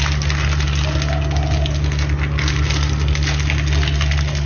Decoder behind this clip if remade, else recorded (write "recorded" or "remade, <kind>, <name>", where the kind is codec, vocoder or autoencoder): recorded